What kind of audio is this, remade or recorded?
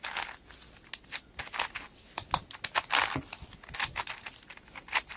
recorded